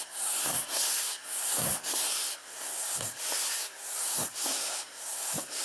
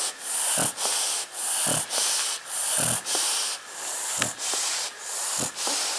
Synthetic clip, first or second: first